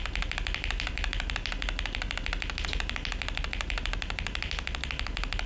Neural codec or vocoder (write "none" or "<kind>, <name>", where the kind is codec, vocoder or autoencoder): none